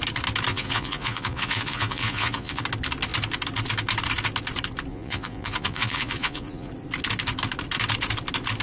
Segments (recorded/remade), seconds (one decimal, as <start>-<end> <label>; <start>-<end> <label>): 0.0-0.5 recorded; 0.5-2.6 remade; 2.6-4.9 recorded; 4.9-6.7 remade; 6.7-8.6 recorded